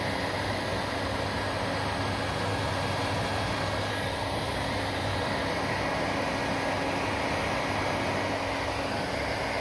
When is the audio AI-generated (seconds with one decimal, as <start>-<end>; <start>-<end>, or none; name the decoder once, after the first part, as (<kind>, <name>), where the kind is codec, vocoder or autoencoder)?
none

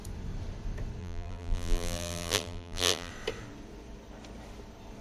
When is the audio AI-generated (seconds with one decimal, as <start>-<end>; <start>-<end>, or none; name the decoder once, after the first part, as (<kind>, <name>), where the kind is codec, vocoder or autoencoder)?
1.0-3.1 (vocoder, BigVGAN v2)

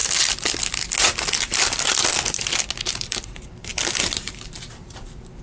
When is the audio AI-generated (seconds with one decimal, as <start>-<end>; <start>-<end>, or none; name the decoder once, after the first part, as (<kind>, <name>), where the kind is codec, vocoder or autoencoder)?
2.8-3.7 (vocoder, BigVGAN v2); 4.6-5.4

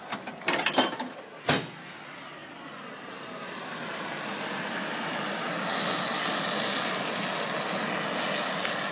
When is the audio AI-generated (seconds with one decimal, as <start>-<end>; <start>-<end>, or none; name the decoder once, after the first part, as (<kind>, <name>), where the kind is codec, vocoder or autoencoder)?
3.8-5.7 (vocoder, BigVGAN v2)

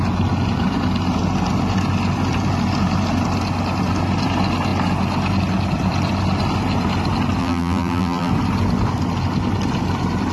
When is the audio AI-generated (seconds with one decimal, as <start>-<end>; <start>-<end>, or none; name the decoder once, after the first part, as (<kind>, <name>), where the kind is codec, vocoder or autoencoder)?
7.4-8.3 (vocoder, BigVGAN v2)

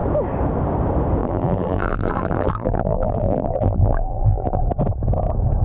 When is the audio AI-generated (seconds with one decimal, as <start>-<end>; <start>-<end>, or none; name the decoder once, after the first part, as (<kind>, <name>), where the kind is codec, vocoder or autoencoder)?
1.2-4.6 (vocoder, BigVGAN v2)